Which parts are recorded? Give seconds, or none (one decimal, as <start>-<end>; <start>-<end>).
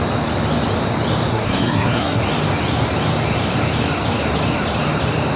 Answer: 0.0-1.3; 2.2-5.4